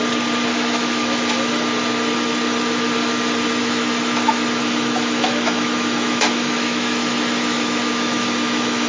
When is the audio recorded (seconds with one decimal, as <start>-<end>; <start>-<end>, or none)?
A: 0.0-0.5; 1.5-3.6